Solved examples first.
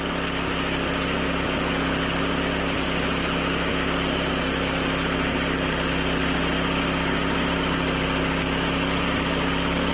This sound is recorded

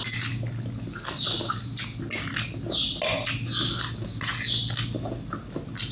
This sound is recorded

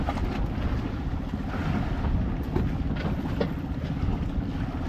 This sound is recorded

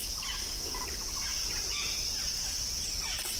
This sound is recorded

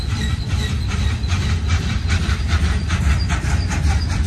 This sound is remade